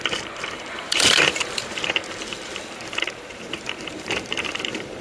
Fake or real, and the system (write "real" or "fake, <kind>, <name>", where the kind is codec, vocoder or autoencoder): fake, vocoder, BigVGAN v2